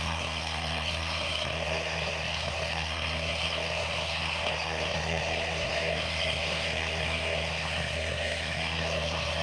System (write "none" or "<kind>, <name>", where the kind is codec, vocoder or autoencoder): codec, SNAC